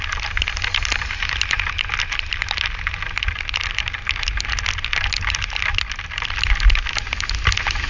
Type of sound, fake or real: real